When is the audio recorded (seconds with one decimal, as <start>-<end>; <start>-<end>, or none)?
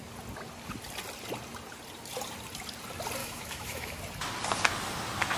0.0-3.2; 4.0-5.4